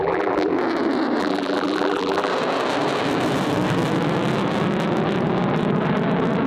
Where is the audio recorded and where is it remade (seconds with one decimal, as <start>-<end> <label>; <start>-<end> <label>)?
0.0-0.5 remade; 0.5-1.2 recorded; 1.2-2.3 remade; 2.3-6.5 recorded